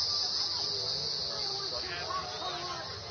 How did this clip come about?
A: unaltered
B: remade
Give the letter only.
A